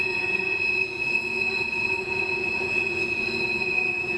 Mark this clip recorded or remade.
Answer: remade